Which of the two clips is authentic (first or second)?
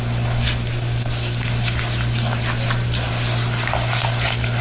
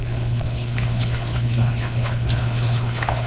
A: first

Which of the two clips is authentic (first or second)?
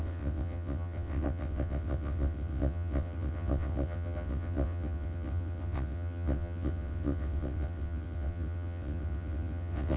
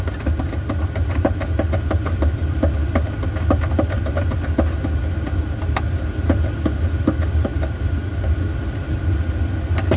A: second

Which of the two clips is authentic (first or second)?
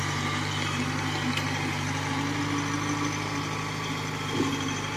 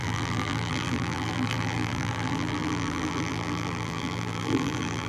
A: first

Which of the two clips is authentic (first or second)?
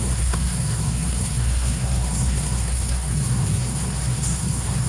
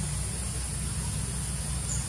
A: second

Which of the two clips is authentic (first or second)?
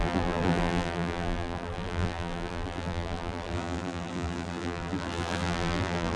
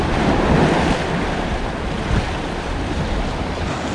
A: second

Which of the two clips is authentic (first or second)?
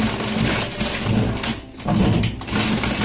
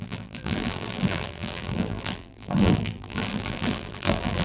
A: first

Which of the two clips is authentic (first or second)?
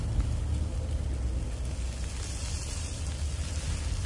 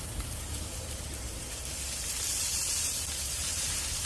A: first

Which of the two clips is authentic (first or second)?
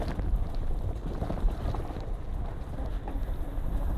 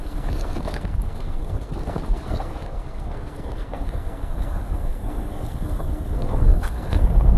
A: first